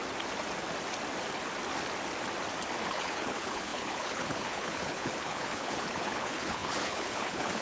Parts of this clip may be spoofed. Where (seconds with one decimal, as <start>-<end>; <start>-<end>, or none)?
2.9-7.6